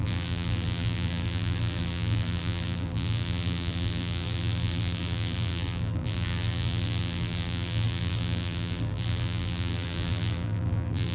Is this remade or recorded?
remade